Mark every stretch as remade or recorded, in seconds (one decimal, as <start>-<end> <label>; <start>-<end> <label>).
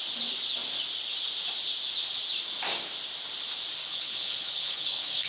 0.0-3.8 recorded; 3.8-5.3 remade